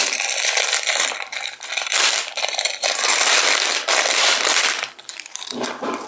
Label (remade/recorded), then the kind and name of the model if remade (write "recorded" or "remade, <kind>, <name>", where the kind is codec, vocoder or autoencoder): remade, vocoder, BigVGAN v2